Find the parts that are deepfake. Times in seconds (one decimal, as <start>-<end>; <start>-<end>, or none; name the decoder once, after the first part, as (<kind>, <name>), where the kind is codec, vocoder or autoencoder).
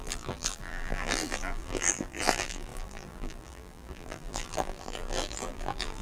0.0-6.0 (vocoder, BigVGAN v2)